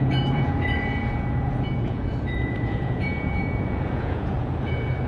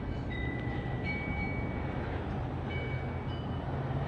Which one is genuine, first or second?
second